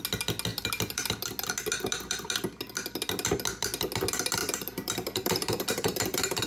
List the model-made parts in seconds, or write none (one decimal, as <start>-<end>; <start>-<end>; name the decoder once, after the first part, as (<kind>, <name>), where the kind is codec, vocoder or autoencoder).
0.5-1.1 (vocoder, BigVGAN v2); 4.4-6.5